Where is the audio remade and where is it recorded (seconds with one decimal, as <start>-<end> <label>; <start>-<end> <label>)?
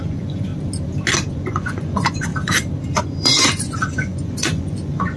0.0-0.5 remade; 0.5-1.3 recorded; 1.3-2.3 remade; 2.3-2.9 recorded; 2.9-5.2 remade